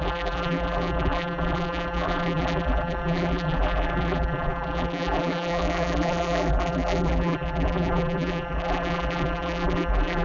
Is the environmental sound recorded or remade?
remade